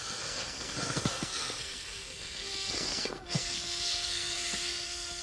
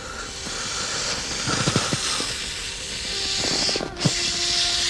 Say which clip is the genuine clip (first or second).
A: second